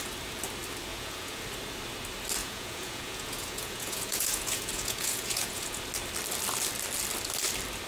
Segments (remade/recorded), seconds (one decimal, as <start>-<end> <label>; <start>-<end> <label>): 0.0-0.9 recorded; 0.9-1.4 remade; 1.4-2.4 recorded; 2.4-5.8 remade; 5.8-7.9 recorded